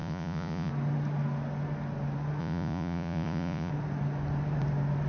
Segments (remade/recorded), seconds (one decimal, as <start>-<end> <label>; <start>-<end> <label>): 0.0-0.7 remade; 0.7-2.4 recorded; 2.4-3.7 remade; 3.7-5.1 recorded